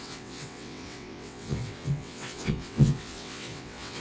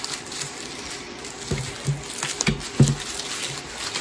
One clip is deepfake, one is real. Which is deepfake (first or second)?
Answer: first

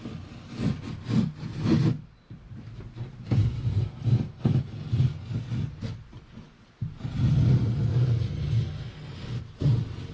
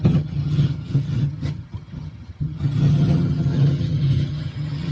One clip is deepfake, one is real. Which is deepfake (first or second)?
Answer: second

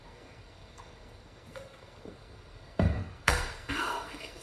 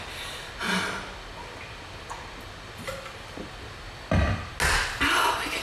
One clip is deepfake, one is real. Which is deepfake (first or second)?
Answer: first